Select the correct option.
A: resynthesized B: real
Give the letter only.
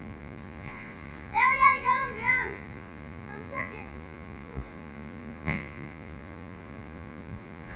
A